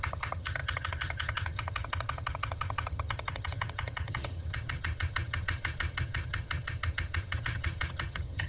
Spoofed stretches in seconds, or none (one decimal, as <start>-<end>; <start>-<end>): 0.0-8.5